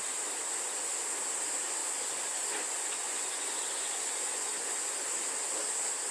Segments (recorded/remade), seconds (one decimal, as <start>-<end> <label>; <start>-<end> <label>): 0.0-1.8 recorded; 1.8-5.0 remade; 5.0-6.1 recorded